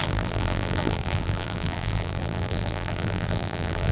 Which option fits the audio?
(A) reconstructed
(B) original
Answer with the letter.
A